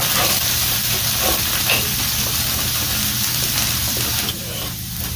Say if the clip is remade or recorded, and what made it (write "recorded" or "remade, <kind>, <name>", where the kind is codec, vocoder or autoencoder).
recorded